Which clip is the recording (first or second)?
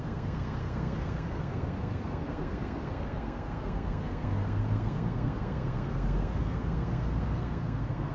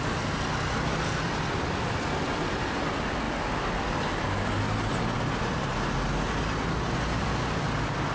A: second